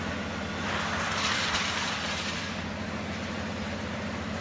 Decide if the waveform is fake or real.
real